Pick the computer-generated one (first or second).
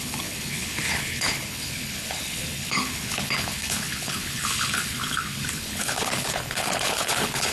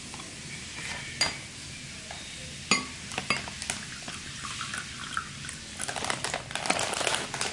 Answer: first